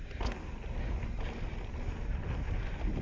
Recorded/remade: recorded